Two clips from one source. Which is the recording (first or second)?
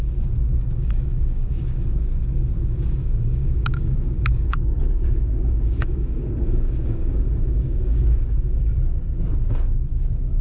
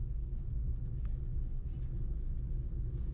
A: second